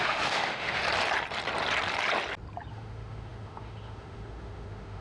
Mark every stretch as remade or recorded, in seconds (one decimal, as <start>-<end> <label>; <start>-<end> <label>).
0.0-0.8 remade; 0.8-2.7 recorded; 2.7-5.0 remade

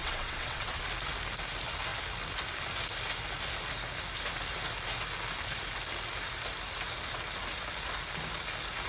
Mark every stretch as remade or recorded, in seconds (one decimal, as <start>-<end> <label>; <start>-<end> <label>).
0.0-0.8 remade; 0.8-8.9 recorded

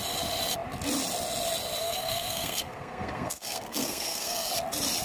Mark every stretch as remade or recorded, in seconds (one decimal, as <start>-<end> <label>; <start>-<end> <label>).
0.0-1.8 recorded; 1.8-4.5 remade; 4.5-5.0 recorded

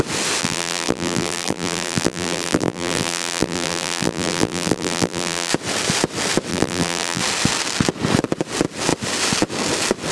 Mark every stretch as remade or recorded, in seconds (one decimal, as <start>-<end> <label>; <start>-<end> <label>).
0.0-0.4 recorded; 0.4-5.5 remade; 5.5-6.5 recorded; 6.5-7.2 remade; 7.2-10.1 recorded

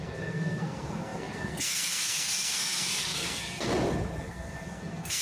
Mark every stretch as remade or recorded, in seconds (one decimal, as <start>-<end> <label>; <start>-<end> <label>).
0.0-3.7 remade; 3.7-4.2 recorded; 4.2-5.2 remade

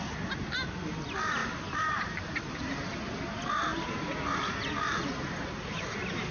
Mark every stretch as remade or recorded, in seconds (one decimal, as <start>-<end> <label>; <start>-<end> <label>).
0.0-6.3 recorded

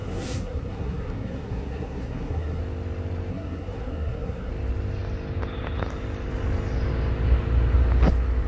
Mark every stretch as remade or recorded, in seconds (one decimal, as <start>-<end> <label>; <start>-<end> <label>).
0.0-2.6 remade; 2.6-3.3 recorded; 3.3-4.5 remade; 4.5-8.5 recorded